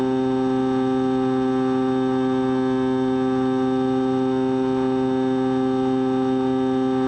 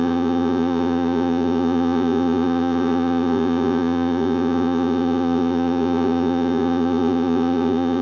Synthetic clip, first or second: second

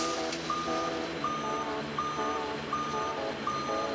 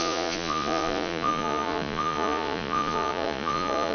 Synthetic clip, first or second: second